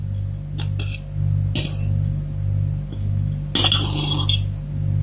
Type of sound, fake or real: real